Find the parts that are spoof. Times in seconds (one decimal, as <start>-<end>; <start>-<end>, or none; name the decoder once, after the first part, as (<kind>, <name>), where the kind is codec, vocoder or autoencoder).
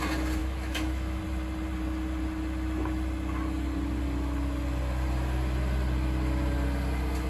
0.4-1.2 (autoencoder, DAC-VAE)